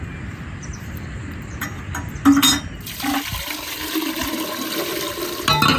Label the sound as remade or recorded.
recorded